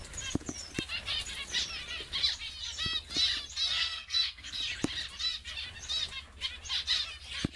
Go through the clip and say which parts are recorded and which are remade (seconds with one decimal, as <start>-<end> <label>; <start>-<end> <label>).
0.0-3.8 recorded; 3.8-4.6 remade; 4.6-7.6 recorded

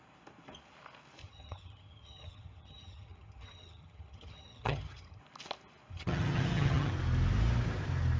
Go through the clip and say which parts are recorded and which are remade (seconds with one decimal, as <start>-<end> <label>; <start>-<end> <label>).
0.0-1.2 recorded; 1.2-5.2 remade; 5.2-5.9 recorded; 5.9-6.9 remade; 6.9-8.2 recorded